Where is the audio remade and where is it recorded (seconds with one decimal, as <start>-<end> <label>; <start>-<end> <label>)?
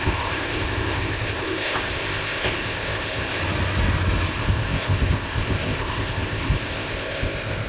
0.0-3.4 remade; 3.4-4.3 recorded; 4.3-7.7 remade